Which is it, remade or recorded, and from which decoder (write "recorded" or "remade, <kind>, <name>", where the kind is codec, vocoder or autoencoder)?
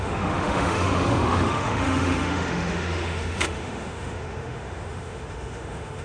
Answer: remade, autoencoder, DAC-VAE